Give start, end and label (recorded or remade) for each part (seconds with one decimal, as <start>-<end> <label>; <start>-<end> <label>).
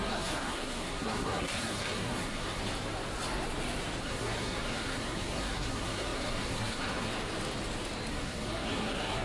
0.0-2.6 remade; 2.6-4.0 recorded; 4.0-7.1 remade; 7.1-8.1 recorded; 8.1-9.2 remade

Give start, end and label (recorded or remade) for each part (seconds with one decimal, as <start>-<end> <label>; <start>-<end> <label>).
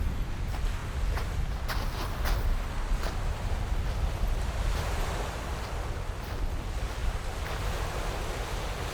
0.0-7.0 recorded; 7.0-7.6 remade; 7.6-8.9 recorded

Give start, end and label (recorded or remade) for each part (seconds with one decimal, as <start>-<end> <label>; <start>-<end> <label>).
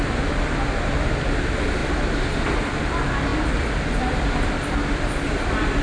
0.0-5.8 recorded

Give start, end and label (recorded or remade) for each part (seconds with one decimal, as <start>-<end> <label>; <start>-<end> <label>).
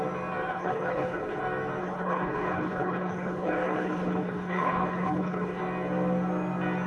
0.0-0.5 recorded; 0.5-1.4 remade; 1.4-1.8 recorded; 1.8-5.6 remade; 5.6-6.9 recorded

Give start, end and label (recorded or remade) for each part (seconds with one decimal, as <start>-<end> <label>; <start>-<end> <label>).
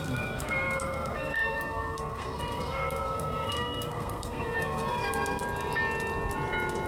0.0-5.4 remade; 5.4-6.9 recorded